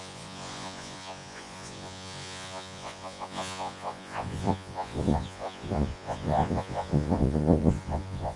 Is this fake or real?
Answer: fake